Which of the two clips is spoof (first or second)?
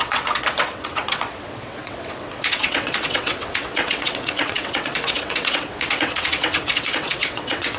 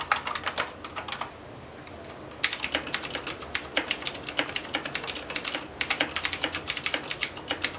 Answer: first